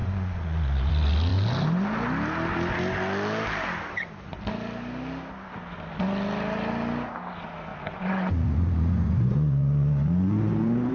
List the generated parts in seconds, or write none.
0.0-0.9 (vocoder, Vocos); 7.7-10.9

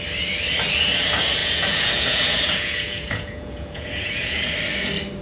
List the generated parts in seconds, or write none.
1.4-4.5 (vocoder, Vocos)

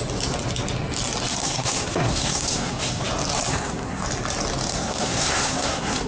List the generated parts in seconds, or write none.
1.4-3.0 (codec, SNAC); 3.5-4.0; 4.7-6.1

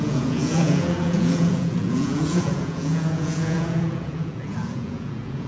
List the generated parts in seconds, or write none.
0.0-5.5 (vocoder, Vocos)

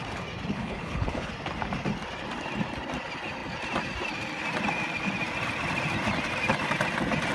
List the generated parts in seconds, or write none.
0.5-1.3 (codec, HILCodec)

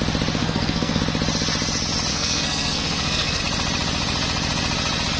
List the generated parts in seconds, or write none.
0.4-1.0 (codec, SNAC); 2.1-3.4

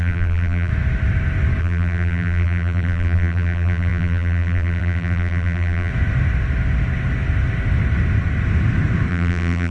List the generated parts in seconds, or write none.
0.0-0.7 (vocoder, BigVGAN v2); 1.6-5.9; 9.1-9.7